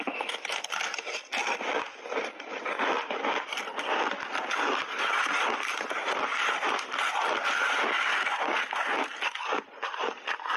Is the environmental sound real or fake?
fake